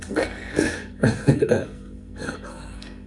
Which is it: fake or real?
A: fake